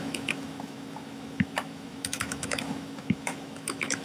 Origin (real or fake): fake